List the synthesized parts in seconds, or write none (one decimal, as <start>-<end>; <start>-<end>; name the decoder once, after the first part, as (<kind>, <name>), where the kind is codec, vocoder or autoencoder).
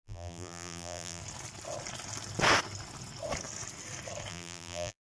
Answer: 0.0-1.2 (vocoder, BigVGAN v2); 4.3-5.1